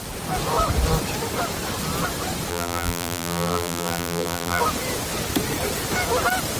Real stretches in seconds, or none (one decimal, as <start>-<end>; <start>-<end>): 0.0-2.5; 4.6-6.6